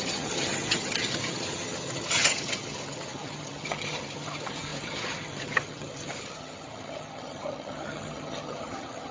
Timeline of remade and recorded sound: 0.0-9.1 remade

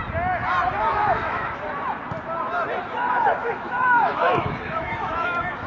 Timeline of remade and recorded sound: 0.0-0.9 recorded; 0.9-1.6 remade; 1.6-3.4 recorded; 3.4-5.7 remade